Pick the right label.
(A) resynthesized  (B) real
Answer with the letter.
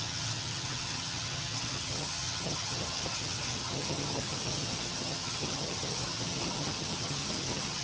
A